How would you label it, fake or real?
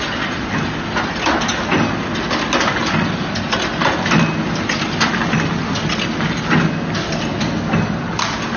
real